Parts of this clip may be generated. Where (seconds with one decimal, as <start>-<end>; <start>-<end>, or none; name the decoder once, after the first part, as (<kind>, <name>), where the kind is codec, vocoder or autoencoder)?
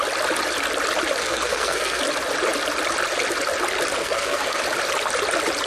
1.2-2.0 (codec, SNAC); 4.0-4.6